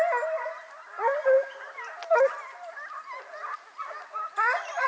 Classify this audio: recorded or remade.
recorded